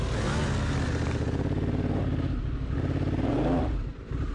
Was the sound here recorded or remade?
recorded